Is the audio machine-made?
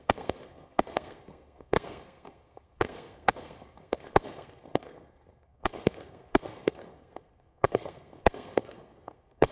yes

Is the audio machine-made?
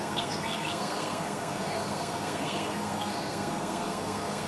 yes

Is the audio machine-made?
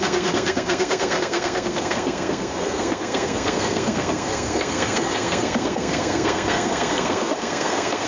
yes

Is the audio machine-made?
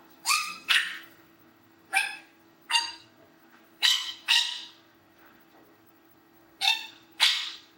yes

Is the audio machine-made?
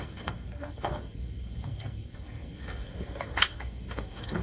yes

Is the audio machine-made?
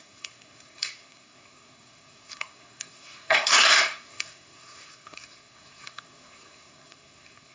yes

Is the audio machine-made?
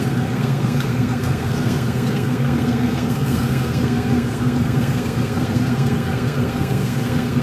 yes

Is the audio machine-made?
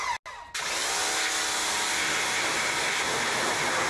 no